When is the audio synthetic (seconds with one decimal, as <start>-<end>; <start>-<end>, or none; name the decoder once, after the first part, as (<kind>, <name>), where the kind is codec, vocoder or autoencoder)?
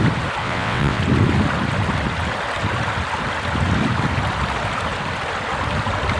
0.4-1.0 (vocoder, WaveNeXt)